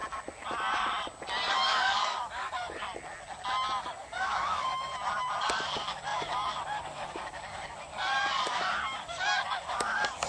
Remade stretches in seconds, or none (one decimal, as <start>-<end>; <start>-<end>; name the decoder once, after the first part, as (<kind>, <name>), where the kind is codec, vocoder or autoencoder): 1.5-2.8 (codec, DAC); 3.8-4.9; 5.4-10.3